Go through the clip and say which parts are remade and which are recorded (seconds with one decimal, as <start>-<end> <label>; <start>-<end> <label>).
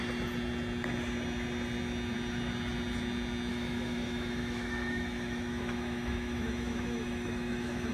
0.0-3.5 recorded; 3.5-7.9 remade